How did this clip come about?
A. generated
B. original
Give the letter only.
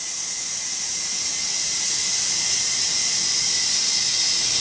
B